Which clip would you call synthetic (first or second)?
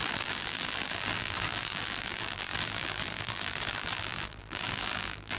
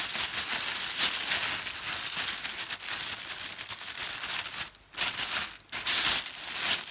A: first